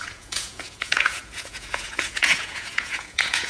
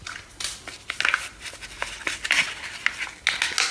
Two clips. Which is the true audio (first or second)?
second